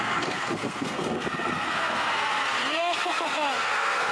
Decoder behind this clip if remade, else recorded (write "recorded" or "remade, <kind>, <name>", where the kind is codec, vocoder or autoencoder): remade, codec, SNAC